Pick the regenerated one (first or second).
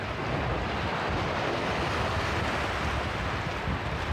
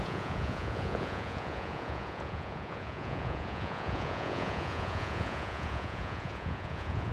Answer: second